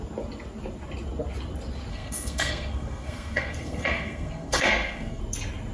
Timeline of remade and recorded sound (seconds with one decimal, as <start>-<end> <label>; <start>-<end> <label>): 0.0-1.9 recorded; 1.9-5.2 remade; 5.2-5.7 recorded